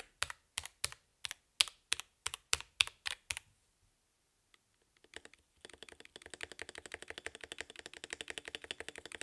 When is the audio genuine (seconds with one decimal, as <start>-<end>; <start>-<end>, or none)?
0.0-9.2